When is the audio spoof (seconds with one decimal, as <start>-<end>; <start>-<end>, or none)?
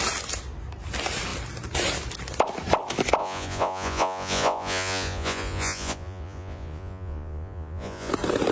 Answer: 3.2-8.1